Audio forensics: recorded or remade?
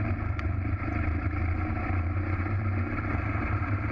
remade